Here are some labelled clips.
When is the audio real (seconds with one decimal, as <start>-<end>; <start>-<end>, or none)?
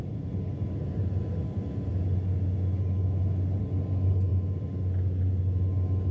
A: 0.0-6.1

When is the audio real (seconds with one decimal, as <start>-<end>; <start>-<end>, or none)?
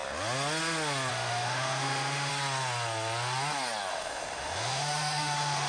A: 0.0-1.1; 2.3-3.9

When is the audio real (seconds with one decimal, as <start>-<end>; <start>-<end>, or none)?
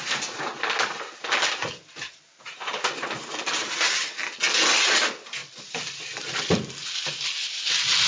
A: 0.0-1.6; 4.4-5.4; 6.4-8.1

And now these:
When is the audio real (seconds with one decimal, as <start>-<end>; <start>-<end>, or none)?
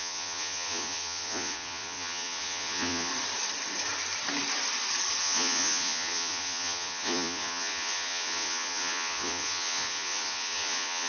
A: 3.1-5.2